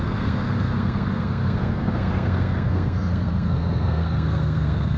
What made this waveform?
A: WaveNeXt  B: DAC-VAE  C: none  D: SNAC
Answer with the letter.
D